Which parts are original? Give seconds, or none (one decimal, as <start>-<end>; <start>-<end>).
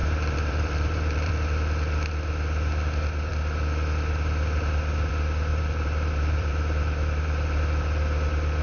1.3-5.5; 7.6-8.6